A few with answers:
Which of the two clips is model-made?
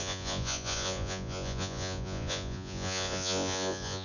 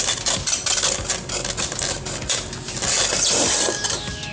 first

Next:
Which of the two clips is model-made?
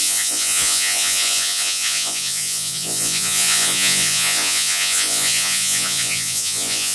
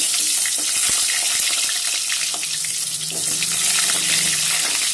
first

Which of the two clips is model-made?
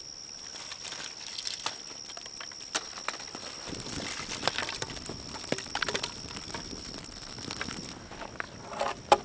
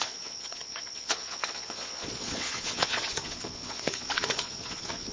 second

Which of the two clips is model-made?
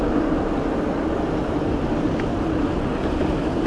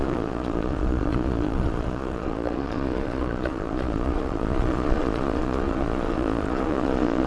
second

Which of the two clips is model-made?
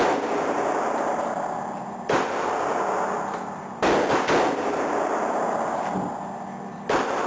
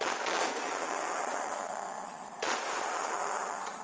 second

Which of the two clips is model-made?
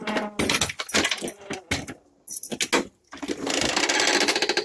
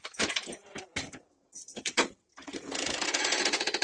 second